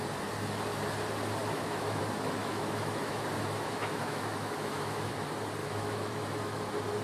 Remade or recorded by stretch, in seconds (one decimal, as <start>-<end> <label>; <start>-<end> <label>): 0.0-1.4 recorded; 1.4-2.0 remade; 2.0-2.4 recorded; 2.4-5.1 remade; 5.1-5.6 recorded; 5.6-6.6 remade; 6.6-7.0 recorded